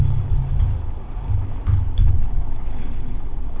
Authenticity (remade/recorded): remade